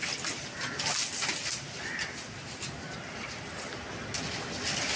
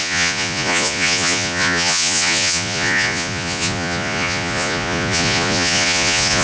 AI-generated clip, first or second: second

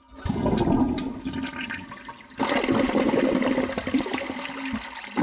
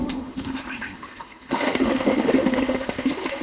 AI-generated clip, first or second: second